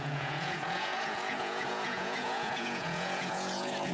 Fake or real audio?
fake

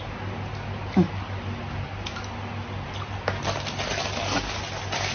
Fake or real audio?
real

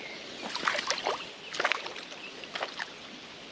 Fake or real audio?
real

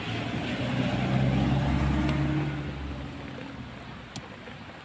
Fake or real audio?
real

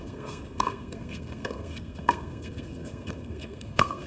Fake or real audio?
fake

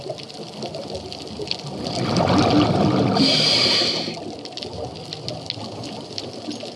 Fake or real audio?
real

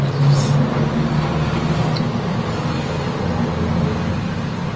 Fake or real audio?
real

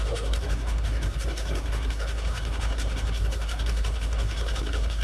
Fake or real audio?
fake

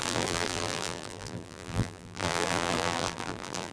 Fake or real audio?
fake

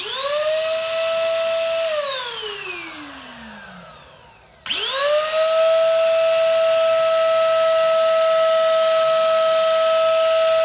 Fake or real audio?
real